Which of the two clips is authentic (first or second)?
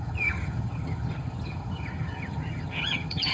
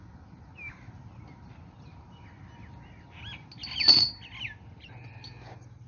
second